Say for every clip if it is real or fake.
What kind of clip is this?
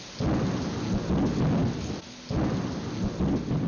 real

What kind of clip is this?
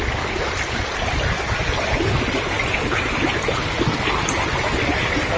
real